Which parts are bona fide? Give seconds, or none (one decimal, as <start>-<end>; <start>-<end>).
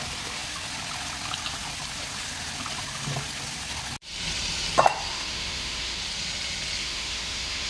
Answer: 0.0-5.1; 6.0-6.8